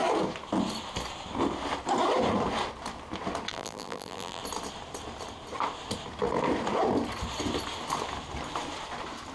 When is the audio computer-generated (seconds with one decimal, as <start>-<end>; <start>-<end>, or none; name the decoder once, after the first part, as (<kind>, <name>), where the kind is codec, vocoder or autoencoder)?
3.5-4.4 (vocoder, BigVGAN v2)